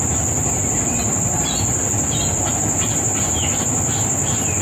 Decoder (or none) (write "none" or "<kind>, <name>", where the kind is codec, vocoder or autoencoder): none